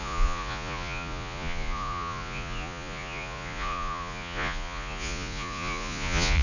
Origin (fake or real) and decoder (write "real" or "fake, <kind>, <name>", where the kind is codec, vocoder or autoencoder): fake, vocoder, Vocos